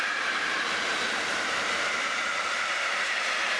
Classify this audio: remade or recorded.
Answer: remade